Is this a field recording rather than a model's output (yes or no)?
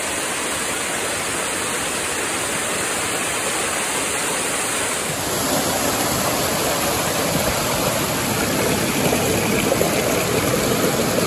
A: yes